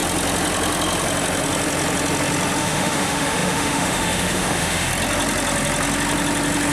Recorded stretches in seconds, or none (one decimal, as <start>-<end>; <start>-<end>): 0.0-2.6; 4.9-6.7